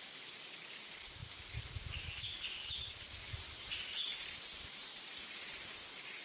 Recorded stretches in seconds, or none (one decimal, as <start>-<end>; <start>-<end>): 0.0-6.2